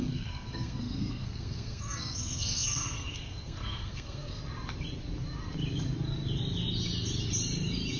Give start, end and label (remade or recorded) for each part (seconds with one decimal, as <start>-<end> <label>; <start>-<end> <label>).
0.0-4.4 remade; 4.4-8.0 recorded